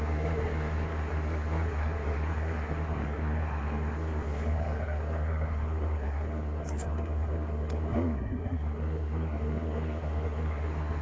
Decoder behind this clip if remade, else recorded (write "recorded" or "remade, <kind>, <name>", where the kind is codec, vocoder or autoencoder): remade, codec, SNAC